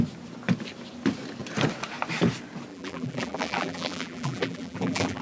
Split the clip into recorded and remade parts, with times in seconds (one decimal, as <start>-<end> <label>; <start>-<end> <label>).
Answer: 0.0-2.7 recorded; 2.7-5.2 remade